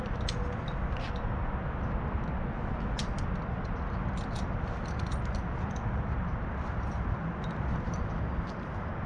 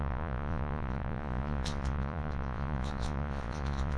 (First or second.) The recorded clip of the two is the first